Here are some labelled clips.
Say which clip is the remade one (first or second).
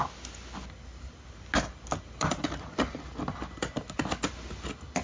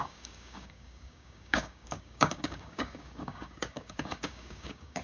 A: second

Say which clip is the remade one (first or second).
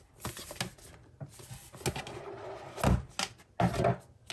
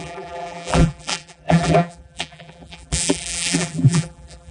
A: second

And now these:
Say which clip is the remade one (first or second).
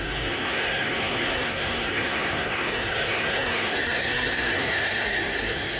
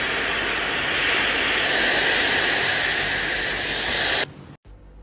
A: first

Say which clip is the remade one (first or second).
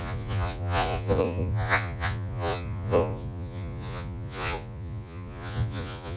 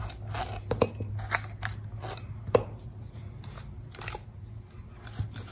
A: first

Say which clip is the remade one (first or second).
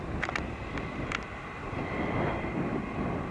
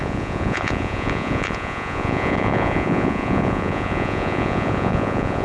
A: second